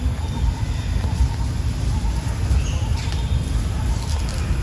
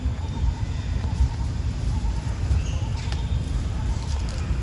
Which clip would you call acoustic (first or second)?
first